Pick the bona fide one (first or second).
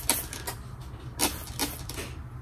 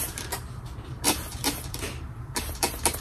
first